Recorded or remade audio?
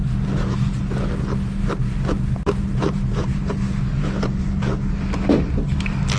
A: recorded